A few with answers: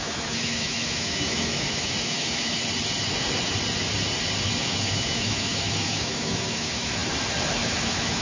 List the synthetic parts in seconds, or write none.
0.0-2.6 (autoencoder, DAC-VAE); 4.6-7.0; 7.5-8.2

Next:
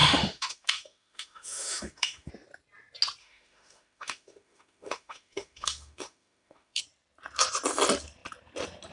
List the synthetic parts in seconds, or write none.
0.0-2.3 (autoencoder, DAC-VAE); 3.2-6.8

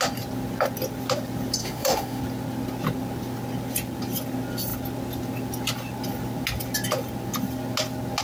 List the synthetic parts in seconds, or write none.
1.6-2.2 (autoencoder, DAC-VAE)